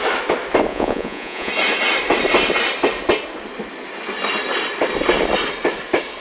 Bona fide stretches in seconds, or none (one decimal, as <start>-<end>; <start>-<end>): 0.0-0.7; 1.5-6.2

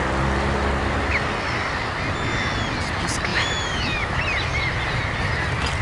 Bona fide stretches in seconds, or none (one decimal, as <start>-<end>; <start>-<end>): 0.0-3.3; 4.2-5.8

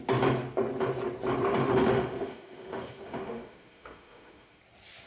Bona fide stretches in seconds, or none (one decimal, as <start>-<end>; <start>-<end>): 0.0-1.6; 4.6-5.1

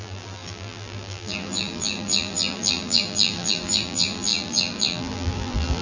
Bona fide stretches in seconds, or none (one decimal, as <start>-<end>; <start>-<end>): none

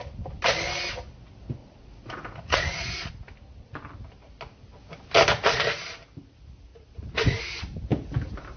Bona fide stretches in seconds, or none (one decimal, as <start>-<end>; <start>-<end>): 0.0-1.6; 3.1-6.7; 7.4-8.6

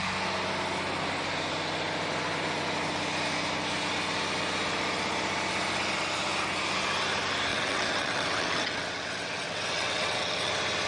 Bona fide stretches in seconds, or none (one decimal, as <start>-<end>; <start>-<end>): 0.0-7.5; 10.5-10.9

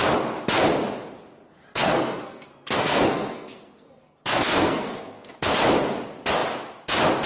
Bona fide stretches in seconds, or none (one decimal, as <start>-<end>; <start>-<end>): 0.0-1.7; 5.3-7.3